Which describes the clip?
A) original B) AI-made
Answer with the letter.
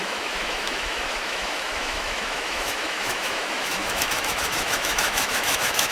B